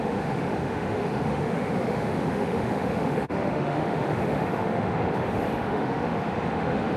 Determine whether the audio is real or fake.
fake